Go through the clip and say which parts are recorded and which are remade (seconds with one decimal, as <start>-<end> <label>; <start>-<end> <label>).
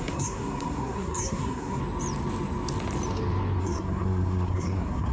0.0-1.8 remade; 1.8-3.6 recorded; 3.6-5.1 remade